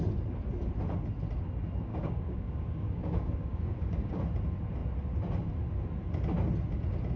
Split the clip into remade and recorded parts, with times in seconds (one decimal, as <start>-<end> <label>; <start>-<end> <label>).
0.0-1.9 recorded; 1.9-4.2 remade; 4.2-7.2 recorded